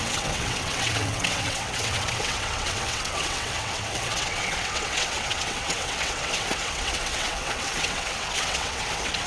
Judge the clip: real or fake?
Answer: fake